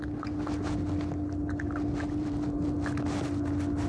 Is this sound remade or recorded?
recorded